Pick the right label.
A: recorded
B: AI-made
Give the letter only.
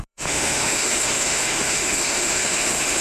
B